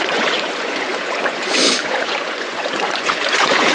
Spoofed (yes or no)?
yes